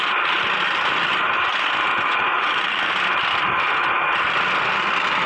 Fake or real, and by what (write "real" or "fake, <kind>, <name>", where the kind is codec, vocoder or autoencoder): real